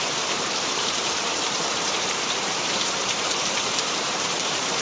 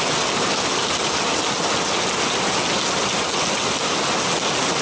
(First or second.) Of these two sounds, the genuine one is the second